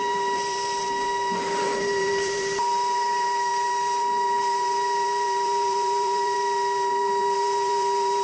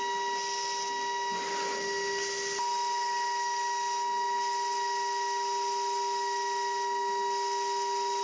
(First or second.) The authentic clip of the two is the second